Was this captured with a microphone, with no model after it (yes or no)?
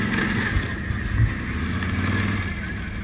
yes